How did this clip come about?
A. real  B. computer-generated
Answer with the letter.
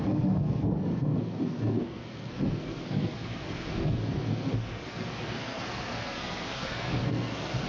B